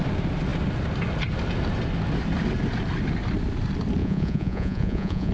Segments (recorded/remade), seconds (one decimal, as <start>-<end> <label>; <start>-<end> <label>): 0.0-4.0 recorded; 4.0-5.3 remade